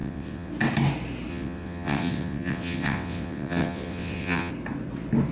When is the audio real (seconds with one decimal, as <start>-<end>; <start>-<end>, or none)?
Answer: 0.5-1.3; 4.5-5.3